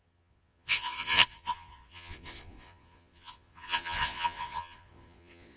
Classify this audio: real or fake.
fake